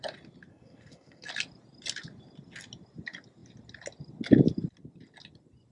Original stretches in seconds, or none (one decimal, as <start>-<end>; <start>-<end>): 0.0-0.5; 1.3-5.7